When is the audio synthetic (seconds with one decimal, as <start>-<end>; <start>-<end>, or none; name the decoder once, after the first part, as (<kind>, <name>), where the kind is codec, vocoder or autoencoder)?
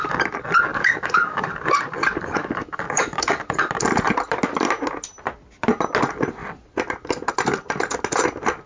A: 0.7-3.7 (codec, DAC)